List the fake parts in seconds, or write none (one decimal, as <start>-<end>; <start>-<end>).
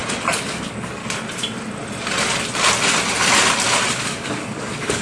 0.5-1.0; 4.0-5.0